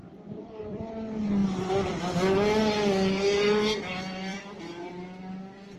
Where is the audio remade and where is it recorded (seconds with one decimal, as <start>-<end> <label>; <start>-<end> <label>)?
0.0-0.9 remade; 0.9-4.3 recorded; 4.3-4.9 remade; 4.9-5.8 recorded